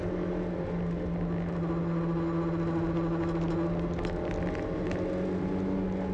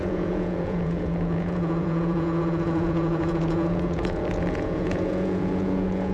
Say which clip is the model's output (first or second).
second